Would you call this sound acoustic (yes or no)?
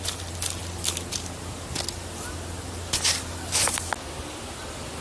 yes